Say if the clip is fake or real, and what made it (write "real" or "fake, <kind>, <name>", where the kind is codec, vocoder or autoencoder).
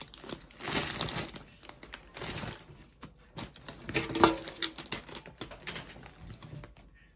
real